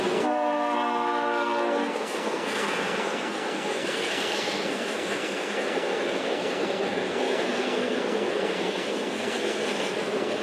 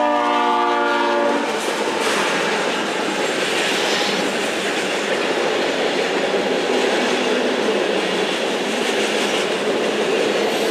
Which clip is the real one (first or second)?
second